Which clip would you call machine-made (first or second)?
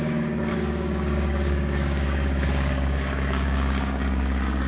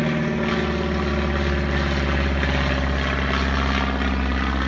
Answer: first